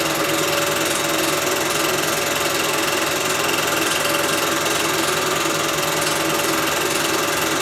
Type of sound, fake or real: real